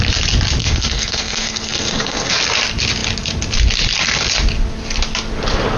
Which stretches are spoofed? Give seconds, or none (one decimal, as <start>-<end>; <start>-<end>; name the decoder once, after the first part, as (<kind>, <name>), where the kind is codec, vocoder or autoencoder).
0.6-2.4 (codec, SNAC)